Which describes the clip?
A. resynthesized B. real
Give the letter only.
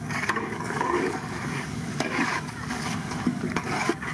A